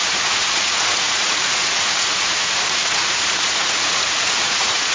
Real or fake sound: fake